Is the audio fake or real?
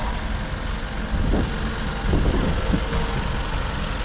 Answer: real